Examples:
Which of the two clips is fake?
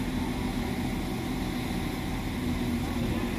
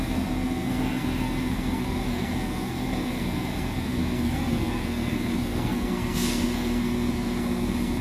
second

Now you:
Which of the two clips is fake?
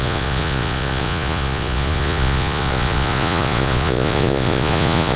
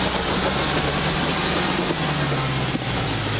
first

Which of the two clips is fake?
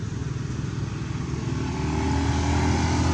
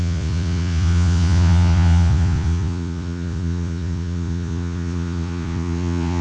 second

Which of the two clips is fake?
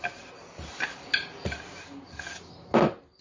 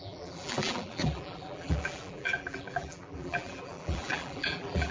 second